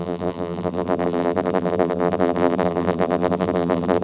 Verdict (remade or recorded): remade